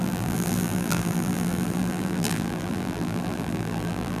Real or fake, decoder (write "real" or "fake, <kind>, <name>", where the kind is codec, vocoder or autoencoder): fake, vocoder, BigVGAN v2